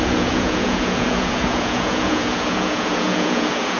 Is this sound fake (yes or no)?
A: yes